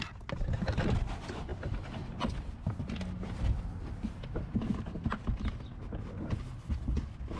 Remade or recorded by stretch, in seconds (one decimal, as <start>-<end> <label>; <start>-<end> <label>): 0.0-7.4 recorded